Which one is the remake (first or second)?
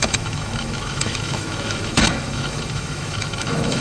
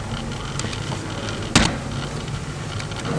first